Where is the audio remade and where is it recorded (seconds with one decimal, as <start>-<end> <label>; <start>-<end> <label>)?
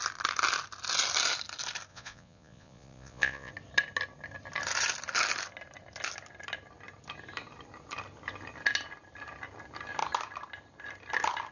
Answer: 0.0-1.9 recorded; 1.9-3.5 remade; 3.5-11.5 recorded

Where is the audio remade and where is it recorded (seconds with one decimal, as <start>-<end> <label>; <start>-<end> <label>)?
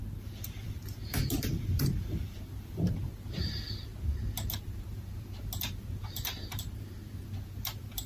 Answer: 0.0-0.6 recorded; 0.6-3.9 remade; 3.9-4.6 recorded; 4.6-8.1 remade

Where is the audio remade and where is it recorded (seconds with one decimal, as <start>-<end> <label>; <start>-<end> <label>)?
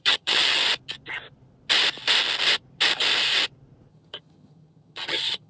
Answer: 0.0-0.6 remade; 0.6-3.9 recorded; 3.9-5.5 remade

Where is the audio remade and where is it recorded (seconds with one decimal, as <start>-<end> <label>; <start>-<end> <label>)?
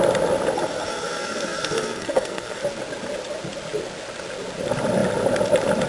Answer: 0.0-0.9 recorded; 0.9-2.6 remade; 2.6-5.9 recorded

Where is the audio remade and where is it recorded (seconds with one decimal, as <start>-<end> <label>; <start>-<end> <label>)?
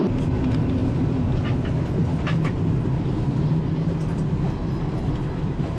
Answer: 0.0-5.8 recorded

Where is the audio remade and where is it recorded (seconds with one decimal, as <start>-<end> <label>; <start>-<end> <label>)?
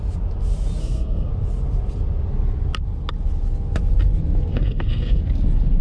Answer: 0.0-0.8 recorded; 0.8-1.3 remade; 1.3-4.5 recorded; 4.5-5.2 remade; 5.2-5.8 recorded